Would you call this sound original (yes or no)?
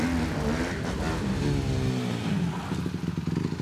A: yes